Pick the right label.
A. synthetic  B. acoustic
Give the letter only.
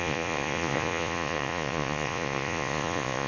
A